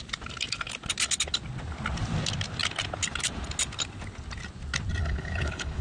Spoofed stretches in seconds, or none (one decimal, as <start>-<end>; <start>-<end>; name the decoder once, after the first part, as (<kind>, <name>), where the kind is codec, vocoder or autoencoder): 5.0-5.8 (codec, HILCodec)